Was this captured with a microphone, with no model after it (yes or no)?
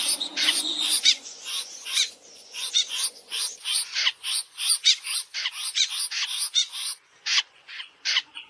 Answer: no